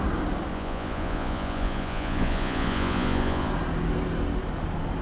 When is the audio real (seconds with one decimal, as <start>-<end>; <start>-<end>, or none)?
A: 0.0-0.5; 3.5-5.0